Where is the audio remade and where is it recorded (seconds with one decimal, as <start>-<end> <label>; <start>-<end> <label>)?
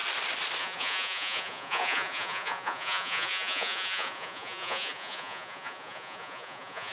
0.0-0.6 recorded; 0.6-6.9 remade